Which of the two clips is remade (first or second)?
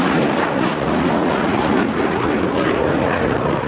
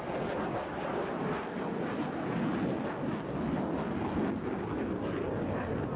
first